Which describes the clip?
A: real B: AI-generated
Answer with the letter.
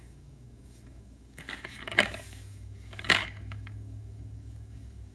B